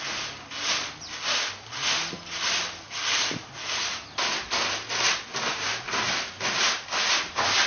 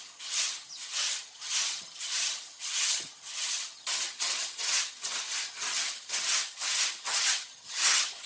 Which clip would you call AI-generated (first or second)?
second